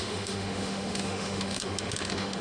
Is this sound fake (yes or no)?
yes